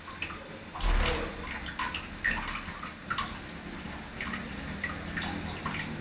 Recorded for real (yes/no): yes